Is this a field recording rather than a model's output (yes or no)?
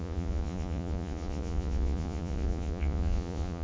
no